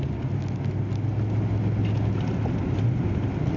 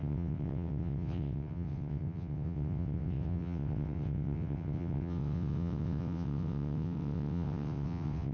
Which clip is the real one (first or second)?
first